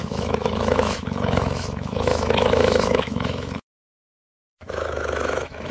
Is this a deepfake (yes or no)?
yes